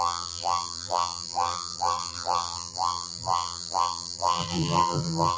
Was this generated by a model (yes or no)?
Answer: yes